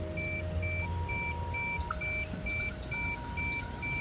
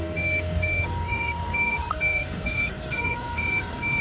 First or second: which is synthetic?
second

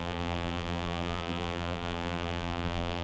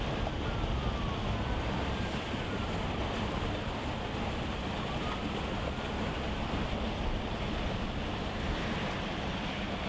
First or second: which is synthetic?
first